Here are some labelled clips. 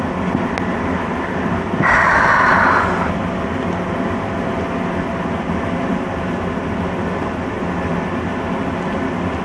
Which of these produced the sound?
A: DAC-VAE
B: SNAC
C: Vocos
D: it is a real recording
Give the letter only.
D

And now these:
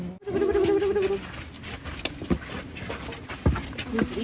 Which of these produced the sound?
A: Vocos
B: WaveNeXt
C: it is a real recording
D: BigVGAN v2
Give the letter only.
C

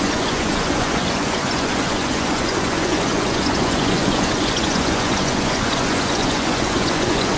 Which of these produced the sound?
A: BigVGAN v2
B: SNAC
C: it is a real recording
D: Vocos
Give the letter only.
D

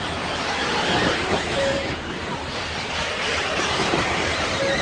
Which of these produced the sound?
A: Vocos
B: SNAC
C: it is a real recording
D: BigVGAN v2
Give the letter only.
D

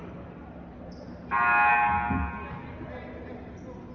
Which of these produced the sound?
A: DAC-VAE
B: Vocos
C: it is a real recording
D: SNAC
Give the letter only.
C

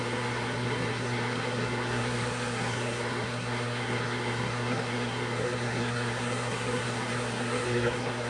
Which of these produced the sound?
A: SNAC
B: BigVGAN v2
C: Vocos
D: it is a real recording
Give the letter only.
A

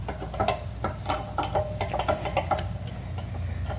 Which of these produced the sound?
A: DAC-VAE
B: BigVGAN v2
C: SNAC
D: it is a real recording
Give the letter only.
D